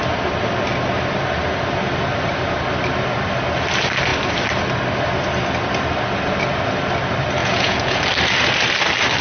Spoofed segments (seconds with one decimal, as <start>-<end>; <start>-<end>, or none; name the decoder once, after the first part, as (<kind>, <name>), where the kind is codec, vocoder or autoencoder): 7.4-8.0 (vocoder, Vocos)